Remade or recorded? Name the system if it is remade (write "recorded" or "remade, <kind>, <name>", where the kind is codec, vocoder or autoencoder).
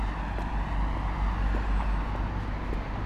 recorded